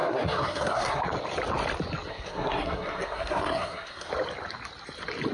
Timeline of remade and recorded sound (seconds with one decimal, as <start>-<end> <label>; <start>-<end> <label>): 0.0-1.0 remade; 1.0-2.1 recorded; 2.1-4.1 remade; 4.1-5.3 recorded